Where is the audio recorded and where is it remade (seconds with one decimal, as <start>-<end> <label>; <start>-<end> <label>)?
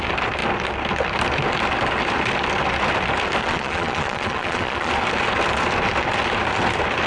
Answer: 0.0-3.4 recorded; 3.4-4.9 remade; 4.9-7.1 recorded